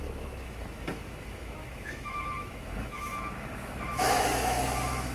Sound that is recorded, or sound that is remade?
remade